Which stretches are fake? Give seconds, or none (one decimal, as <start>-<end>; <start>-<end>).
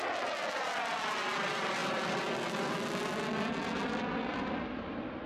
none